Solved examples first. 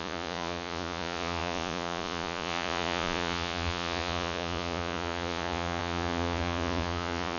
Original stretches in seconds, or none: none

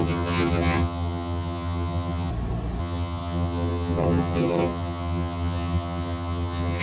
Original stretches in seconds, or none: 2.3-2.8

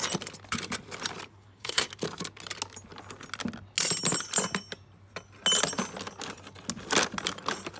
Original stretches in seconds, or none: 0.0-1.3; 1.9-7.8

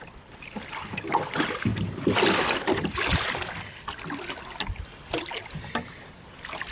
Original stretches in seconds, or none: 0.0-6.7

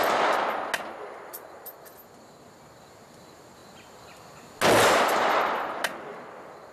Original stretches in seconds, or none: 0.0-6.7